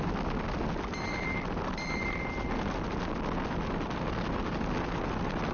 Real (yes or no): yes